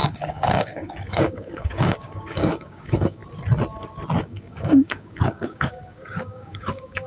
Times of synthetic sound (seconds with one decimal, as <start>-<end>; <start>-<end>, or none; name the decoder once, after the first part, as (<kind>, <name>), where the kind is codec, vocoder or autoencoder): 0.0-3.2 (codec, DAC); 4.2-7.1